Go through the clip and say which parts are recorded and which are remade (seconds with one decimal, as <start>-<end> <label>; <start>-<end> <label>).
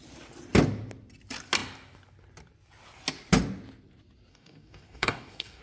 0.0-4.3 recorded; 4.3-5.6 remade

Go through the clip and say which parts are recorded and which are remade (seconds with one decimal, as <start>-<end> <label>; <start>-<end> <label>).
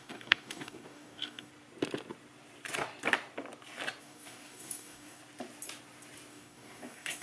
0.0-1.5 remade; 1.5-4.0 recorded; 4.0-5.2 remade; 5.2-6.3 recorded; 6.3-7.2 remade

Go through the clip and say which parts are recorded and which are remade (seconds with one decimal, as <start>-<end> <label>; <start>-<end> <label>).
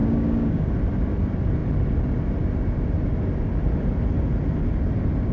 0.0-0.7 remade; 0.7-5.3 recorded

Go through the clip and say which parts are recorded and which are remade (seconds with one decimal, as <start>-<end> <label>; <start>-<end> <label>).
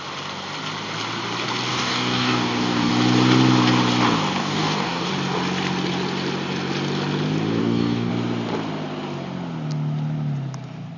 0.0-1.7 recorded; 1.7-2.9 remade; 2.9-4.4 recorded; 4.4-5.1 remade; 5.1-7.6 recorded; 7.6-8.1 remade; 8.1-11.0 recorded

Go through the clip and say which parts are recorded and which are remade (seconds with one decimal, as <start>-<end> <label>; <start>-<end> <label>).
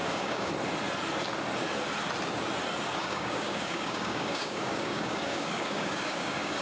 0.0-0.5 remade; 0.5-2.9 recorded; 2.9-6.6 remade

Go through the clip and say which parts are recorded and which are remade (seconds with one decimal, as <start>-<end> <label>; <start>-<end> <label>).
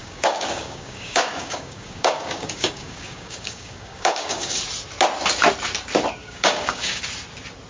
0.0-4.6 remade; 4.6-6.2 recorded; 6.2-7.0 remade; 7.0-7.7 recorded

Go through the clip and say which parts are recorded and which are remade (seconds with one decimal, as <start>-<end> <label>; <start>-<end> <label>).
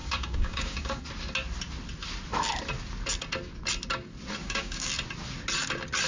0.0-1.0 remade; 1.0-4.4 recorded; 4.4-4.9 remade; 4.9-6.1 recorded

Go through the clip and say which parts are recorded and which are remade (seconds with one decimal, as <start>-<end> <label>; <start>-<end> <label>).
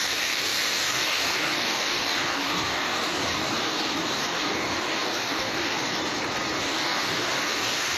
0.0-6.0 remade; 6.0-6.6 recorded; 6.6-8.0 remade